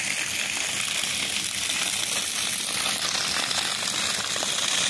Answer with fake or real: real